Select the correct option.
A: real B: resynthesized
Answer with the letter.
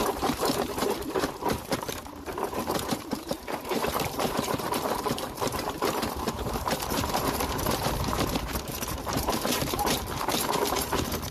B